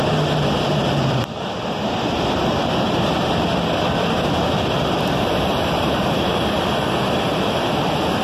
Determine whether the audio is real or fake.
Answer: fake